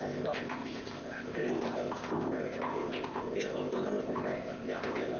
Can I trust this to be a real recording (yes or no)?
no